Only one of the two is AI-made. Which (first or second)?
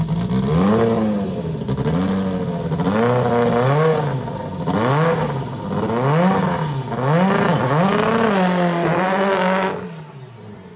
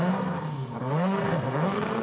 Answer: second